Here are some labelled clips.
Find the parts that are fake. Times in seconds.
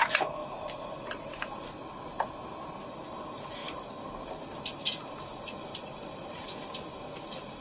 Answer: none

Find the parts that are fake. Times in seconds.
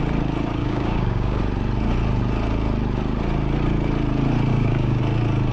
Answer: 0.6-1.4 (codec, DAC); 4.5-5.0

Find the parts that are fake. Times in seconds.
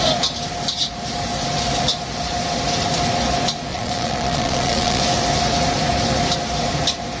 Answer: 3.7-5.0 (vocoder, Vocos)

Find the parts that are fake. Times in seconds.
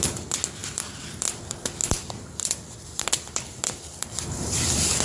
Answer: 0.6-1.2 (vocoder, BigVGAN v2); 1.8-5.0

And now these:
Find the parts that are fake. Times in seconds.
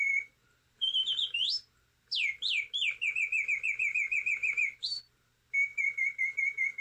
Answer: 0.4-1.5 (vocoder, BigVGAN v2); 4.4-5.0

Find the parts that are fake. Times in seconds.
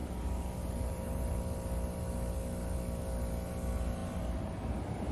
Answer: 0.0-1.4 (vocoder, BigVGAN v2)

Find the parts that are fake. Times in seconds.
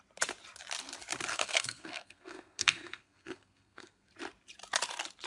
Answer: 1.3-4.1 (codec, SNAC)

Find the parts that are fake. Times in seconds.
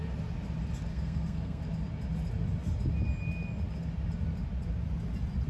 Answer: 0.9-1.6 (codec, SNAC)